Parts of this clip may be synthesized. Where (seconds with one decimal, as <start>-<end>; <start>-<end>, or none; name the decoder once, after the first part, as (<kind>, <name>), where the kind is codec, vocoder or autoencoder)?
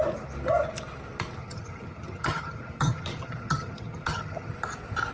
1.4-4.5 (vocoder, HiFi-GAN)